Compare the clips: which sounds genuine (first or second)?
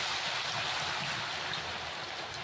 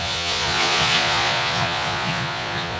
first